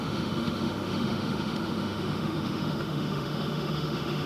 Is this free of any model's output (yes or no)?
no